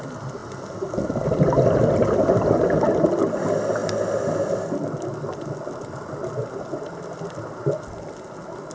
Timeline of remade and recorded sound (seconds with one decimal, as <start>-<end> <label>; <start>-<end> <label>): 0.0-8.7 recorded